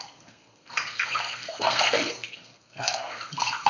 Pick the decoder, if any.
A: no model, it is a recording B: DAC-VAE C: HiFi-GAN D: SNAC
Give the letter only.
D